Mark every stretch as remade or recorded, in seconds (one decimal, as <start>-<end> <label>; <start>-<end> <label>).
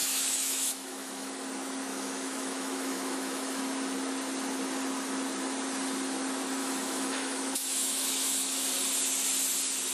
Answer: 0.0-1.3 remade; 1.3-1.9 recorded; 1.9-3.6 remade; 3.6-6.6 recorded; 6.6-8.7 remade; 8.7-9.9 recorded